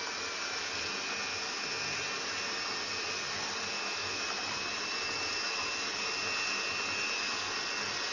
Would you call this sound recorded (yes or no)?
yes